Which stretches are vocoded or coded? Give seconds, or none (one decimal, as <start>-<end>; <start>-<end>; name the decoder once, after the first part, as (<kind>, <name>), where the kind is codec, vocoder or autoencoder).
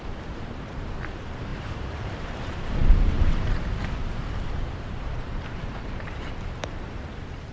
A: 0.0-7.5 (vocoder, BigVGAN v2)